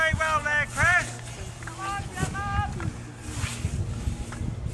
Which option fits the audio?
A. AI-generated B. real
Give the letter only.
B